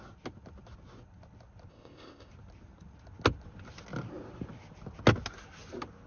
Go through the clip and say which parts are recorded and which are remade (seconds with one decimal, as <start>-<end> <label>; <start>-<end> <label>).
0.0-1.7 recorded; 1.7-2.3 remade; 2.3-6.1 recorded